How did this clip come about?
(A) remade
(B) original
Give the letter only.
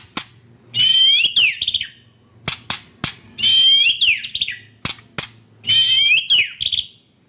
B